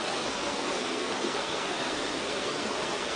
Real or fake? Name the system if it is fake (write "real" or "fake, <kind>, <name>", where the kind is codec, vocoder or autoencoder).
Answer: fake, codec, SNAC